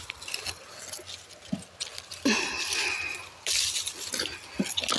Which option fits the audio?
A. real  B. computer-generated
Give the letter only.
A